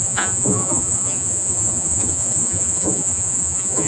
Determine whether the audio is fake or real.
fake